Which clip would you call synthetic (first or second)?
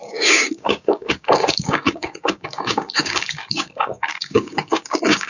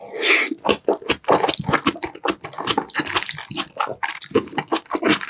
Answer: first